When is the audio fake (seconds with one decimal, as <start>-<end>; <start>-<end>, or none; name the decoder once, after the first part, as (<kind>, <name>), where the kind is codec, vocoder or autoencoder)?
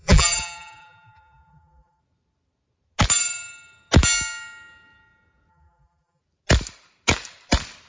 0.0-2.0 (vocoder, BigVGAN v2); 5.5-6.2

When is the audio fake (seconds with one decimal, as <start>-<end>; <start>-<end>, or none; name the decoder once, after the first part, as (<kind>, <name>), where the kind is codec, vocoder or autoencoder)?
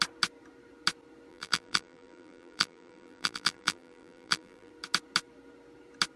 1.3-4.7 (vocoder, BigVGAN v2)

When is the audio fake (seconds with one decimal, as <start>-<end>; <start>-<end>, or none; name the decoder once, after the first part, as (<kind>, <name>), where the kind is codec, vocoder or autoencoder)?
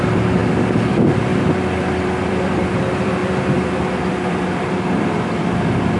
0.0-0.4 (vocoder, BigVGAN v2); 0.9-1.3; 2.3-6.0